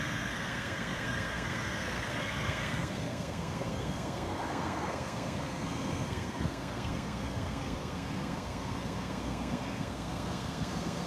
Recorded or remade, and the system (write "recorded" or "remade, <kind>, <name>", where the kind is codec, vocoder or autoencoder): remade, codec, SNAC